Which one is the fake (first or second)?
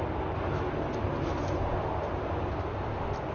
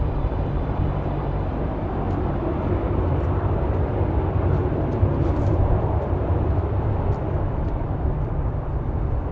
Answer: second